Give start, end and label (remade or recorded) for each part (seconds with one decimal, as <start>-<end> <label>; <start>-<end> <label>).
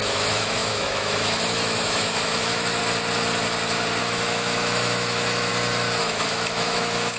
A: 0.0-2.8 remade; 2.8-4.0 recorded; 4.0-5.5 remade; 5.5-6.0 recorded; 6.0-7.2 remade